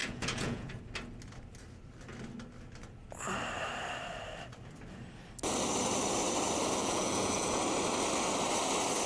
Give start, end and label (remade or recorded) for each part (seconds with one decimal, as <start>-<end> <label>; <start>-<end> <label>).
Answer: 0.0-0.8 remade; 0.8-6.8 recorded; 6.8-7.6 remade; 7.6-9.1 recorded